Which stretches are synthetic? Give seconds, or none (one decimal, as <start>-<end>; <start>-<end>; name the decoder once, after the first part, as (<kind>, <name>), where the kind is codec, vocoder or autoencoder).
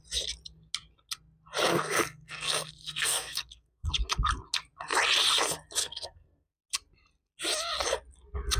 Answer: 1.7-3.9 (codec, SNAC); 5.8-6.6